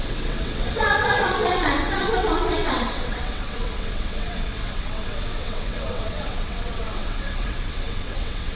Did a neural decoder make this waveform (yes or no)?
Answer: yes